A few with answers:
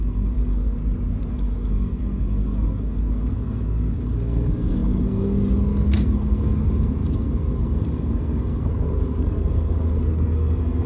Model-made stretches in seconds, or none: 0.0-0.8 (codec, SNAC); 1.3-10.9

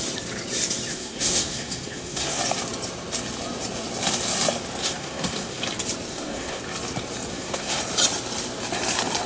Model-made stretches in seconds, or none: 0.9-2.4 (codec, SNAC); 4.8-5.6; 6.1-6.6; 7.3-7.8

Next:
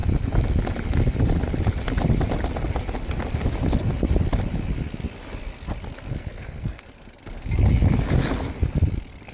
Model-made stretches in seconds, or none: 6.1-6.8 (codec, SNAC)

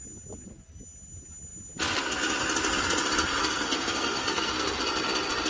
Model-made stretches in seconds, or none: 3.4-4.8 (codec, SNAC)

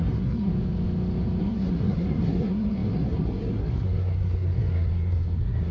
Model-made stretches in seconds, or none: 0.0-0.5 (codec, SNAC); 1.4-5.7

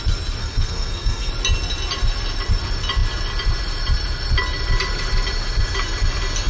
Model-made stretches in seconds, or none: 0.4-1.3 (codec, SNAC)